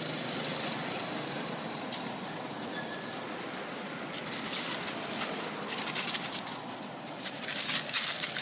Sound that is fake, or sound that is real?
real